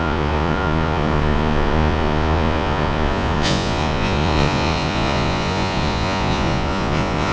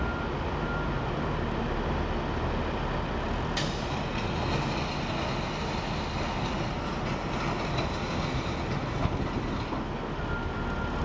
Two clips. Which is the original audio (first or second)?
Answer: second